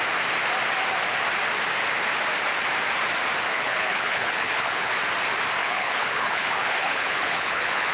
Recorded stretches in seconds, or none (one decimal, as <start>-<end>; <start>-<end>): 0.0-3.5; 4.9-5.6